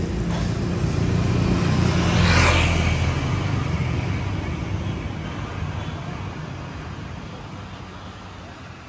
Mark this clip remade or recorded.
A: recorded